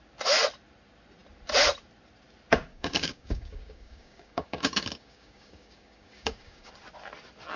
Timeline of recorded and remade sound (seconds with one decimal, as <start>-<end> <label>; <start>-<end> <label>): 0.0-2.7 recorded; 2.7-6.7 remade; 6.7-7.6 recorded

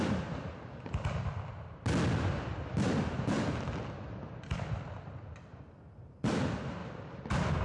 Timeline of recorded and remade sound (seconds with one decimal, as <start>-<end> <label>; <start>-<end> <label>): 0.0-7.6 recorded

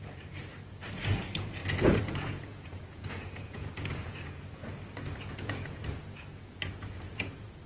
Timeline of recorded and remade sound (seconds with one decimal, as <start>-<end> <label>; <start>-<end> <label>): 0.0-4.6 remade; 4.6-5.3 recorded; 5.3-5.8 remade; 5.8-6.5 recorded; 6.5-7.7 remade